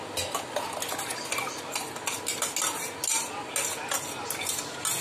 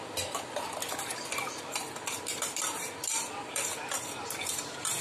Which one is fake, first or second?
second